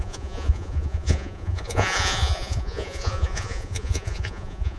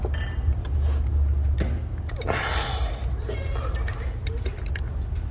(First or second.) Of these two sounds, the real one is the second